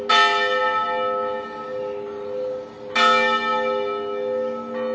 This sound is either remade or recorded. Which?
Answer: recorded